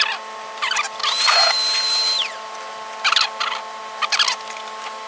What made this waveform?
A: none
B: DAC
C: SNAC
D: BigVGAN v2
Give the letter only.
A